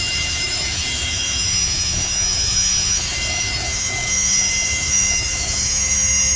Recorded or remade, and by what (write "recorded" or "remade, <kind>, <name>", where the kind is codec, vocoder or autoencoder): remade, autoencoder, DAC-VAE